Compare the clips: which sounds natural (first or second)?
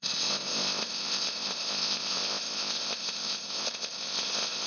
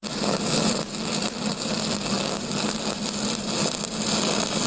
second